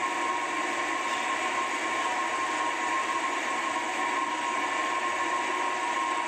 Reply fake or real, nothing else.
real